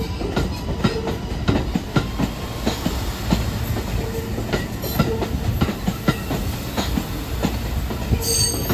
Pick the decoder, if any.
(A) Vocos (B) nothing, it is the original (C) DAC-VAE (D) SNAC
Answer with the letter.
B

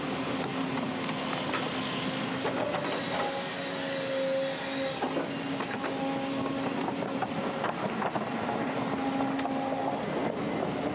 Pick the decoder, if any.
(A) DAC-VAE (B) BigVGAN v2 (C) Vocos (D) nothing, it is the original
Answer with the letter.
D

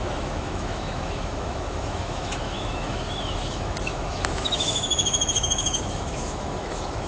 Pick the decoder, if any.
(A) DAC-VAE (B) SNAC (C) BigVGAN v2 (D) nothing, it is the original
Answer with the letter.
A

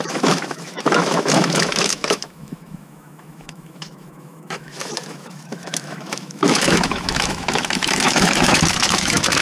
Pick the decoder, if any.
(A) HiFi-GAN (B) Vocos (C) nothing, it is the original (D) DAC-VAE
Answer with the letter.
D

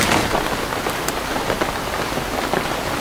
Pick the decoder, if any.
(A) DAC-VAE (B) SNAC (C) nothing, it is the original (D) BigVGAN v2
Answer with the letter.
C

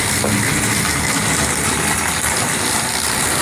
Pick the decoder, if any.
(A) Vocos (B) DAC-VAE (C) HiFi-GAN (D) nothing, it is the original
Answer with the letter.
D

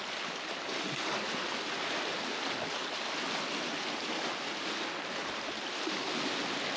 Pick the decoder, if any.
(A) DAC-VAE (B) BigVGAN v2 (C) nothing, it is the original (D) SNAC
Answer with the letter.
C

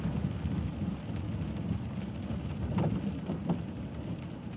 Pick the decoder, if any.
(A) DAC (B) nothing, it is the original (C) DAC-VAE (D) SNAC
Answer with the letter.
B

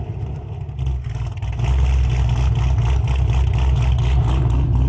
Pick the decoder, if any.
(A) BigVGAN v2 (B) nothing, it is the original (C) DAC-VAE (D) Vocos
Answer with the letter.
B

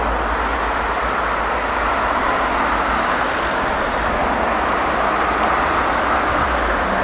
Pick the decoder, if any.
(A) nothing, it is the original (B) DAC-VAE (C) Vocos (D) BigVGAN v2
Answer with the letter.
A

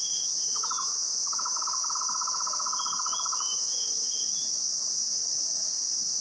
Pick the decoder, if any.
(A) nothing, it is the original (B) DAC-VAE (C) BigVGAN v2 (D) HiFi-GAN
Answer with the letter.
B